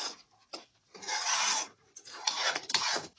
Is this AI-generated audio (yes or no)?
yes